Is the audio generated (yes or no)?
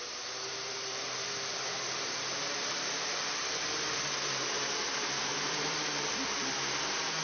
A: yes